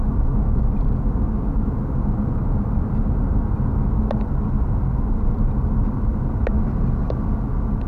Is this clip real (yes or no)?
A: yes